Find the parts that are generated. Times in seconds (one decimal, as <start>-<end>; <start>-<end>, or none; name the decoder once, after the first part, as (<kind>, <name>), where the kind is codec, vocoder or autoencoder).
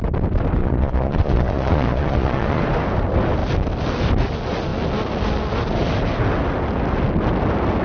0.6-2.6 (vocoder, Vocos)